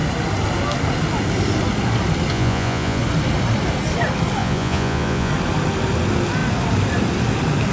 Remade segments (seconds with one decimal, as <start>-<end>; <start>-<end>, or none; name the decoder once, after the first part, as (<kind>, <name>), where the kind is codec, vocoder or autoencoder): 2.3-3.0 (vocoder, Vocos); 4.4-5.3